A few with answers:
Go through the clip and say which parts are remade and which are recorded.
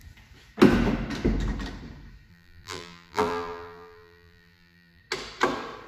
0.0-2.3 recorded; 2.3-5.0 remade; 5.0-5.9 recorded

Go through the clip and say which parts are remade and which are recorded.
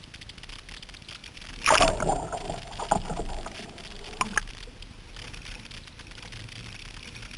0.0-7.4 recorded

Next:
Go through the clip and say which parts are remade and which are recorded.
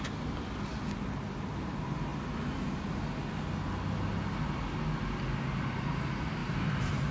0.0-6.4 recorded; 6.4-7.1 remade